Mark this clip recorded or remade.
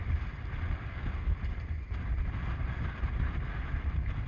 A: recorded